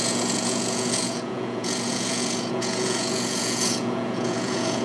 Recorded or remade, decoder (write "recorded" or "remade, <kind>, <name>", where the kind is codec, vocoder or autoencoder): remade, vocoder, Vocos